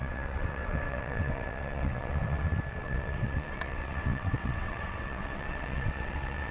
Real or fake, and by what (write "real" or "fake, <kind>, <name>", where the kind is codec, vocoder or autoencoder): fake, vocoder, WaveNeXt